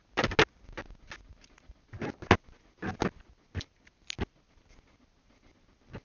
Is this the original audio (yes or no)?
yes